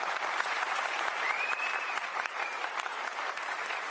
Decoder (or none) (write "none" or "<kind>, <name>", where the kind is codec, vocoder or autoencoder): vocoder, BigVGAN v2